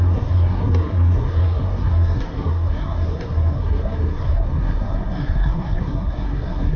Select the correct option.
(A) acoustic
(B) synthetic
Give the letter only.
B